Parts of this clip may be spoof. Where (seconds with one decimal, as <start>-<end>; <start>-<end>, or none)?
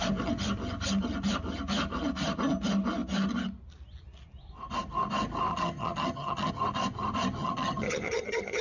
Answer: 5.5-6.5; 7.4-8.6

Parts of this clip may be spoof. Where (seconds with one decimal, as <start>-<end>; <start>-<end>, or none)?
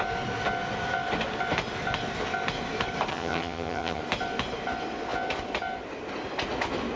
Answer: 3.1-4.0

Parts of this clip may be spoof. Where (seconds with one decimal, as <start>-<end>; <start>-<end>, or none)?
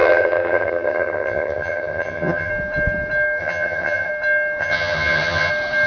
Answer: 0.0-2.5; 3.4-4.1; 4.6-5.5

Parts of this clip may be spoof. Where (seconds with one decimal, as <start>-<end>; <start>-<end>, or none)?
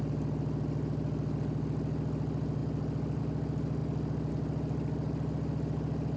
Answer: none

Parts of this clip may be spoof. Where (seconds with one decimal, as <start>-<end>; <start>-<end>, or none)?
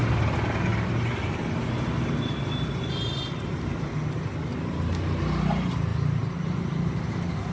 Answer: none